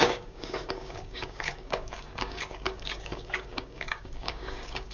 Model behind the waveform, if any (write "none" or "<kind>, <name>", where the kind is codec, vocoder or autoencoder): codec, DAC